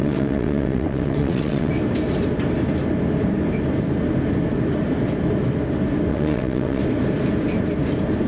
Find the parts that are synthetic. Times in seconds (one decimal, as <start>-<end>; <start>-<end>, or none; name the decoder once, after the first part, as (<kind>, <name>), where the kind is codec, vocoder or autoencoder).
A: 0.0-1.7 (vocoder, WaveNeXt); 6.1-6.8

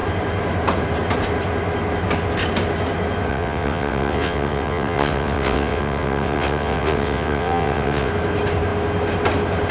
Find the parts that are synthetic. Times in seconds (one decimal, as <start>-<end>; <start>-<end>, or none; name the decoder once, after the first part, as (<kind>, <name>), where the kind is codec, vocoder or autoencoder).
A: 3.3-8.1 (vocoder, WaveNeXt)

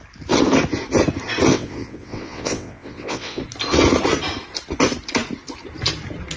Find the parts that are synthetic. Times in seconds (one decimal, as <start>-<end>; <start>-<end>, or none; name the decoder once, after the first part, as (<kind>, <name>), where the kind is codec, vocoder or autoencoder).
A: 1.5-3.4 (vocoder, WaveNeXt)